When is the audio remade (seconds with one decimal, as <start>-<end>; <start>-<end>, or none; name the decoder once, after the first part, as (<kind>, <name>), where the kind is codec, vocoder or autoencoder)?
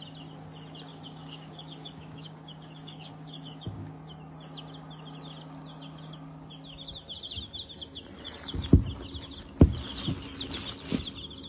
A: 0.9-3.9 (codec, DAC)